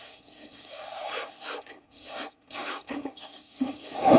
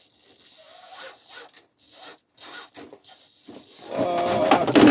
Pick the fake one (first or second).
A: first